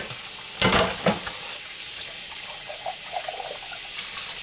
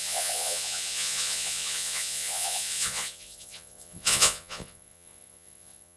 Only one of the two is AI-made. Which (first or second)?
second